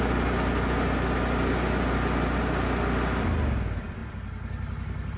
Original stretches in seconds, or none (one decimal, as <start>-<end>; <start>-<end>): 0.0-5.2